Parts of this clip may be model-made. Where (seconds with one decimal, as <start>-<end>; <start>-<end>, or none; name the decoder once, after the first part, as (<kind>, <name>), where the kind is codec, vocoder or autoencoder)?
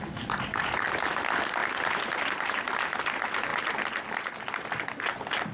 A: none